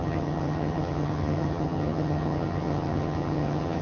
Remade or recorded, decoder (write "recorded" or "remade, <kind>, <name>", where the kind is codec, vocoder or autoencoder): remade, vocoder, HiFi-GAN